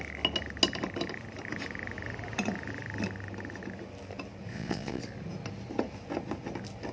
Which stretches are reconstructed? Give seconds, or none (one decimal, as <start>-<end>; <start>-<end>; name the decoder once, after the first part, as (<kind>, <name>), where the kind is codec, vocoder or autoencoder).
4.5-5.0 (vocoder, Vocos)